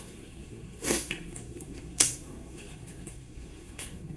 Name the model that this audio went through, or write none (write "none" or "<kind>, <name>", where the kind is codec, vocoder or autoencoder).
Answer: codec, SNAC